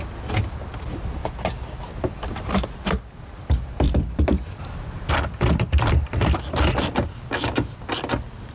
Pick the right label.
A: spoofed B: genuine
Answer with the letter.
A